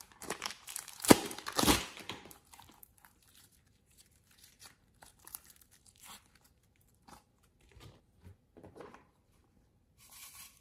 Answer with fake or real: fake